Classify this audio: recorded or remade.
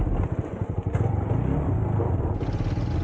recorded